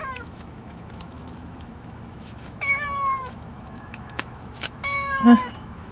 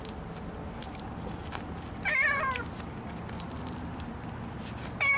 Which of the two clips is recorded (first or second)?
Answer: second